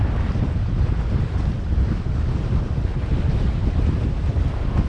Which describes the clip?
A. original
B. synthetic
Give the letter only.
A